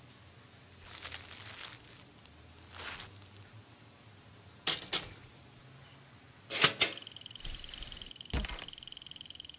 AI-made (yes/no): no